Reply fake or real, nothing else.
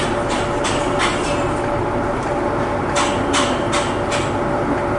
real